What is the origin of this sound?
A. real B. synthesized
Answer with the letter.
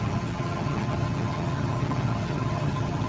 B